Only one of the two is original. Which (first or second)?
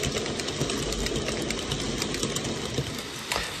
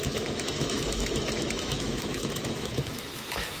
first